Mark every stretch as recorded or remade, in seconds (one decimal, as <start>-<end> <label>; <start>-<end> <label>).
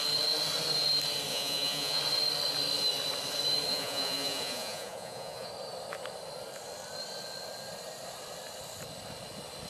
0.0-1.3 recorded; 1.3-2.0 remade; 2.0-3.7 recorded; 3.7-5.5 remade; 5.5-9.7 recorded